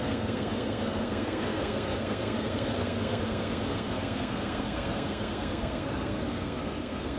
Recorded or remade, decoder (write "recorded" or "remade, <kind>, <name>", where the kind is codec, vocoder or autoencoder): remade, codec, SNAC